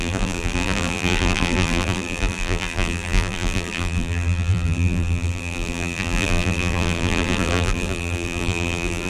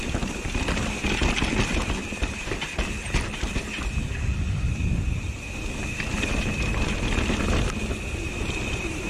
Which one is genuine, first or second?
second